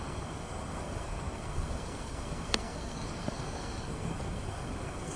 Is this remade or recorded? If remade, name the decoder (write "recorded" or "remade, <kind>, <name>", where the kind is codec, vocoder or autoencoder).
remade, codec, SNAC